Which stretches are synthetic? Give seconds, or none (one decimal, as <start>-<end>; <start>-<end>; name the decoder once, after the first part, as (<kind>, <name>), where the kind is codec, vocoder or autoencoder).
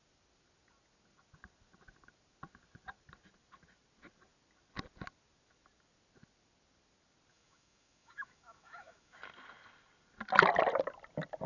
7.3-9.2 (autoencoder, DAC-VAE)